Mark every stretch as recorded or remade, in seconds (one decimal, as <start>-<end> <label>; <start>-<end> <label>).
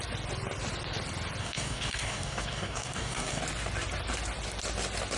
0.0-1.4 recorded; 1.4-3.4 remade; 3.4-5.2 recorded